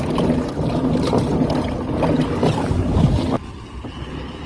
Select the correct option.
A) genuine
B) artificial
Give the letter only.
A